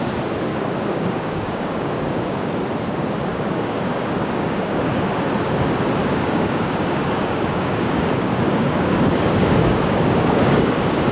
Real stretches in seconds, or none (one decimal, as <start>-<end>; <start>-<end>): 0.0-0.5; 2.5-3.3; 5.2-6.0